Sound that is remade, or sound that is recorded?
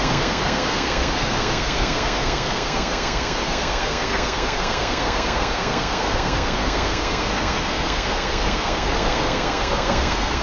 remade